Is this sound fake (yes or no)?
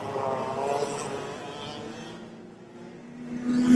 no